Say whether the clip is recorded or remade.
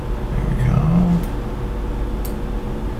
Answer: recorded